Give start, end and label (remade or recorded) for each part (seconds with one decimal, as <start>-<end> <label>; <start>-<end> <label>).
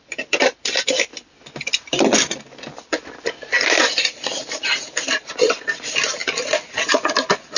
0.0-1.1 remade; 1.1-3.9 recorded; 3.9-6.2 remade; 6.2-6.9 recorded; 6.9-7.6 remade